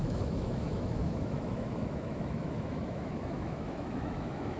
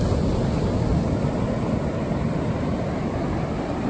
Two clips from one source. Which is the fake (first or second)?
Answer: first